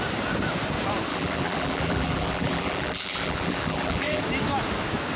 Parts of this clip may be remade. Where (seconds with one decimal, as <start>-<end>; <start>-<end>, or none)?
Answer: 1.1-4.2